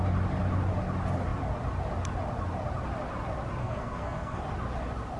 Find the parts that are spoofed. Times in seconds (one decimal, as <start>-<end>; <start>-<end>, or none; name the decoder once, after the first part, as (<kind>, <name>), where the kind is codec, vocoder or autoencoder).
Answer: 3.6-4.4 (codec, SNAC)